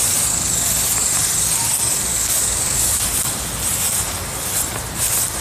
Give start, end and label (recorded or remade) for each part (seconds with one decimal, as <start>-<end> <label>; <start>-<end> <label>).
0.0-2.1 recorded; 2.1-3.0 remade; 3.0-5.4 recorded